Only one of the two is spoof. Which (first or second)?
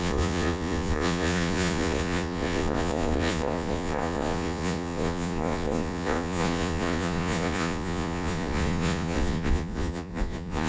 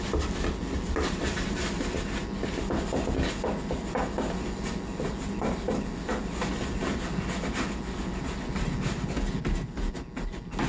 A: first